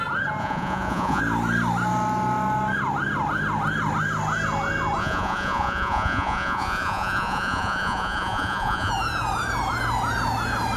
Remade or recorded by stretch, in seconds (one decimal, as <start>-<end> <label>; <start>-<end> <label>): 0.0-0.4 recorded; 0.4-1.2 remade; 1.2-5.0 recorded; 5.0-8.9 remade; 8.9-10.8 recorded